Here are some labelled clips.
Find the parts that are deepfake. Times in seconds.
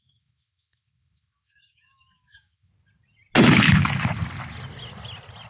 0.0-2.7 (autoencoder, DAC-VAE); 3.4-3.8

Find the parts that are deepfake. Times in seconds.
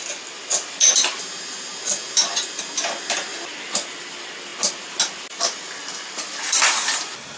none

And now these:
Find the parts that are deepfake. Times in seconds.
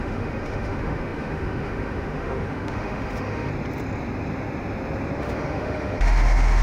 0.0-3.5 (autoencoder, DAC-VAE); 5.2-6.6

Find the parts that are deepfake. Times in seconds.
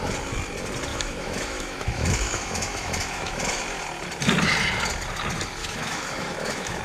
0.9-3.6 (autoencoder, DAC-VAE); 5.6-6.8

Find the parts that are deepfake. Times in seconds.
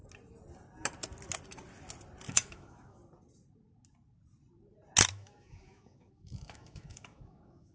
2.3-3.0 (autoencoder, DAC-VAE); 5.1-7.7